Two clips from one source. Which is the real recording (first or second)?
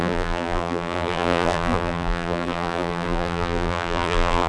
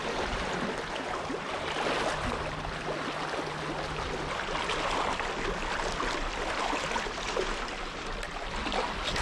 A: second